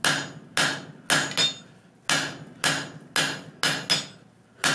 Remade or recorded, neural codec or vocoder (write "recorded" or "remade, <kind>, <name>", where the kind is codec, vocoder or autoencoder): recorded